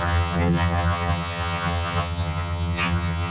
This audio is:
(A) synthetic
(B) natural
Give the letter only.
A